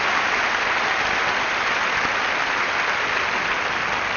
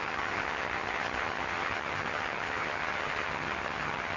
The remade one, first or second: second